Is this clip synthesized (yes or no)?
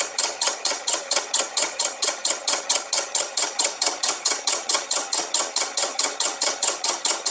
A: yes